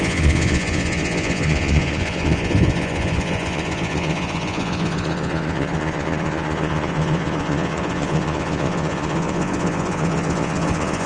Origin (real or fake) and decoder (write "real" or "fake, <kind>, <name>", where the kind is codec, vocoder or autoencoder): fake, vocoder, Vocos